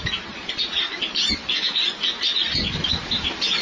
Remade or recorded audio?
remade